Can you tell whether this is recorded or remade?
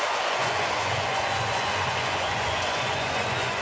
remade